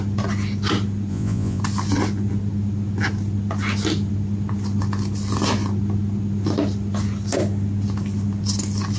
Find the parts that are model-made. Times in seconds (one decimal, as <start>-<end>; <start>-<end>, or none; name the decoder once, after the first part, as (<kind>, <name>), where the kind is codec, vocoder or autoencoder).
1.1-1.6 (vocoder, Vocos)